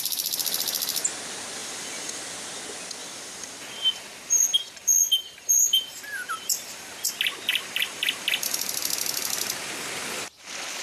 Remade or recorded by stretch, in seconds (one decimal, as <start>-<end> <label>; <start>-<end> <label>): 0.0-1.6 recorded; 1.6-2.2 remade; 2.2-3.0 recorded; 3.0-7.1 remade; 7.1-7.5 recorded; 7.5-8.6 remade; 8.6-10.8 recorded